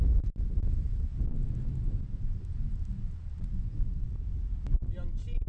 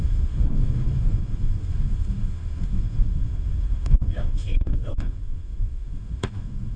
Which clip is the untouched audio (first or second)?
first